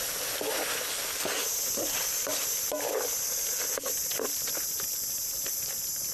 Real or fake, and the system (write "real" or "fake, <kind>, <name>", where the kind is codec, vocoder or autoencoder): real